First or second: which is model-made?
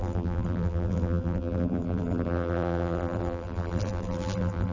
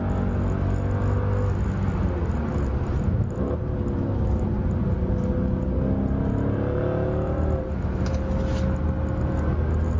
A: first